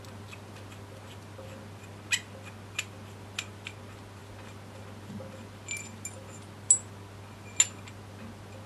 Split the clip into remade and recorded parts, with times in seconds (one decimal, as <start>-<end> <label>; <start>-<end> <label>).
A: 0.0-8.7 recorded